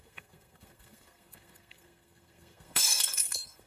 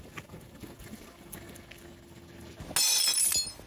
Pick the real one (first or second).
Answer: second